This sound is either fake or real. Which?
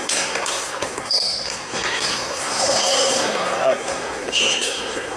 fake